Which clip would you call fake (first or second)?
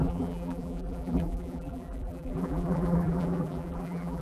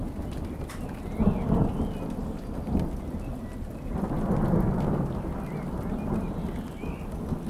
first